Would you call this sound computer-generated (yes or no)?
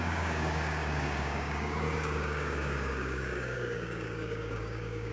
yes